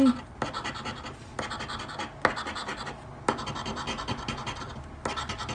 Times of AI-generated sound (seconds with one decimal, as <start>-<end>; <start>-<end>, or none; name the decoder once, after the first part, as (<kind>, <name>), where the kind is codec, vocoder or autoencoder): none

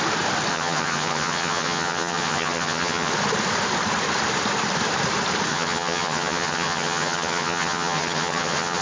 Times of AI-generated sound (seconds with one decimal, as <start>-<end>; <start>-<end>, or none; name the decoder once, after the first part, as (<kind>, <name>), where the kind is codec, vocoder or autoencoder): 0.5-3.1 (vocoder, HiFi-GAN); 5.5-8.8

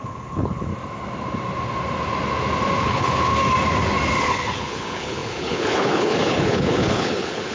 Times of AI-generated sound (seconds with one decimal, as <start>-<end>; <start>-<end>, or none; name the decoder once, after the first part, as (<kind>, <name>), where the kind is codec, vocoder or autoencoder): 0.0-0.7 (codec, HILCodec); 2.8-3.3; 4.2-7.5

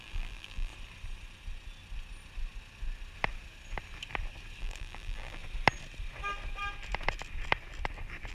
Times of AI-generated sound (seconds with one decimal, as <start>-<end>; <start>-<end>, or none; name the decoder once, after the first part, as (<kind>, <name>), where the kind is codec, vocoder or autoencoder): 0.0-0.7 (vocoder, BigVGAN v2); 4.6-5.4

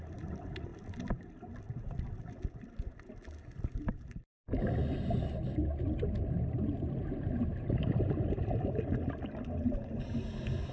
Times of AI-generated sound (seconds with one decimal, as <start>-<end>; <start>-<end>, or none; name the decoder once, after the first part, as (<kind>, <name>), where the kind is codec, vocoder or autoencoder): none

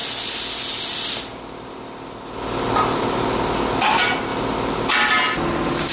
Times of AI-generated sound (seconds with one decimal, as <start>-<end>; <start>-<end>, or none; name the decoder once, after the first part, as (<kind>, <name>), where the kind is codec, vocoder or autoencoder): none